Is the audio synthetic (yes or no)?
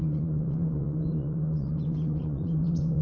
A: yes